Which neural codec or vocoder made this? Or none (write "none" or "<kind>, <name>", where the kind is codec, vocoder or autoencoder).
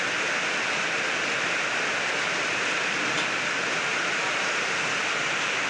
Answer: none